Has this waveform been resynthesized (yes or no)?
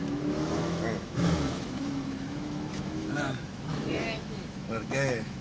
yes